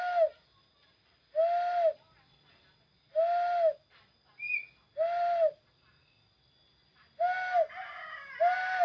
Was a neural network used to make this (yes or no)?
no